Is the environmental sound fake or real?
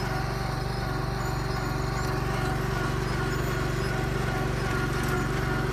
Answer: real